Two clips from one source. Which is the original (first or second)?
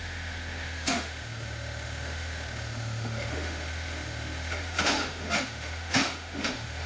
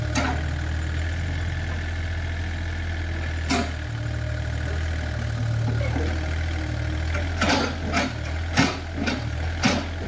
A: second